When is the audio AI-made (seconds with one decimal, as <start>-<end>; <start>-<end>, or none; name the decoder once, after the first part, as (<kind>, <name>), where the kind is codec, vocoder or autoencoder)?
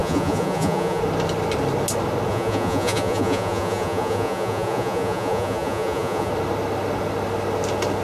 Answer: 0.0-1.0 (vocoder, Vocos); 2.3-6.3